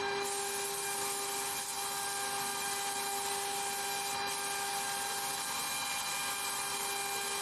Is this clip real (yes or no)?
yes